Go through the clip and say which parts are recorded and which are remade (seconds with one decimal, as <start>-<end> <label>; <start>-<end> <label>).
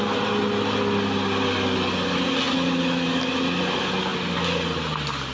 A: 0.0-5.3 recorded